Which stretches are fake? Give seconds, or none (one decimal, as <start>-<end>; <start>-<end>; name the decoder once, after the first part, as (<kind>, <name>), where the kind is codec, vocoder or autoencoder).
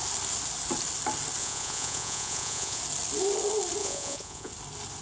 1.4-2.8 (vocoder, Vocos); 3.8-4.5